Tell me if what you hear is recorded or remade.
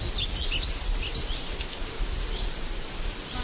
recorded